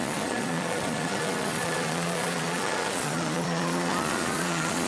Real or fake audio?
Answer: fake